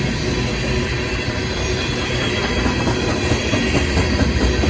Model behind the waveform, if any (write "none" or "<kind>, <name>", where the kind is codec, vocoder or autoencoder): vocoder, BigVGAN v2